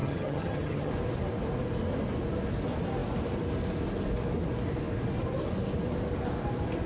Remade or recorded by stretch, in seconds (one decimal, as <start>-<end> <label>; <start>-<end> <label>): 0.0-0.9 remade; 0.9-6.9 recorded